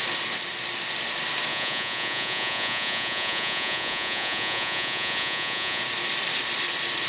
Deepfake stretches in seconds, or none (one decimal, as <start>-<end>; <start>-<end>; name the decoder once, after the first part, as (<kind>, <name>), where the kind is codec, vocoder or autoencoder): 1.5-5.8 (vocoder, Vocos)